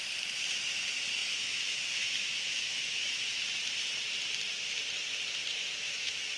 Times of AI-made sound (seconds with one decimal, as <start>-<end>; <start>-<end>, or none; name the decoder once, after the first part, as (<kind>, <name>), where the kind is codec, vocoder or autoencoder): 1.2-3.2 (autoencoder, DAC-VAE); 5.5-6.4